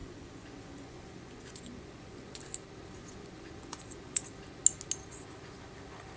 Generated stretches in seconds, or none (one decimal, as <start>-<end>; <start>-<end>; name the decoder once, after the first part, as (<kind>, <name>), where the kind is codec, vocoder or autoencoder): 0.0-2.4 (vocoder, Vocos); 3.0-4.2; 5.1-5.7